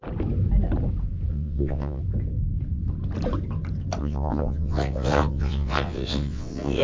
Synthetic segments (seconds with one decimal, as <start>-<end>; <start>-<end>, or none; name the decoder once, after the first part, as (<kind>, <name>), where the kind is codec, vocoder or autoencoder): 1.3-2.0 (vocoder, WaveNeXt); 4.0-6.8